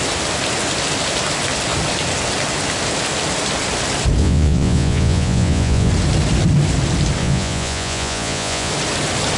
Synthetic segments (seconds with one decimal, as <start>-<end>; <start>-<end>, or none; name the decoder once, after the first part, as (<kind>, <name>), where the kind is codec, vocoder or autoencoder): 4.2-5.9 (vocoder, Vocos); 7.2-8.7